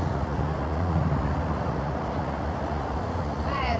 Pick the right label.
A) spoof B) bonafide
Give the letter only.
A